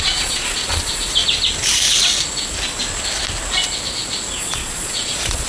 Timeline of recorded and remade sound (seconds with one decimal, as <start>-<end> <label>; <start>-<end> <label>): 0.0-1.2 remade; 1.2-4.4 recorded; 4.4-5.5 remade